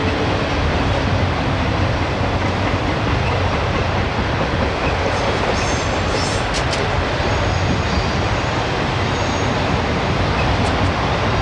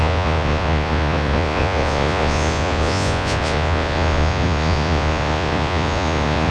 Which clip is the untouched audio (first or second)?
first